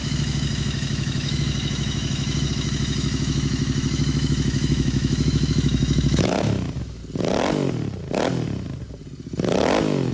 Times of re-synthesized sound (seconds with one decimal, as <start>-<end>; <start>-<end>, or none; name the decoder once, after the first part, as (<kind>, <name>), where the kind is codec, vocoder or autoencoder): 0.0-7.0 (autoencoder, DAC-VAE)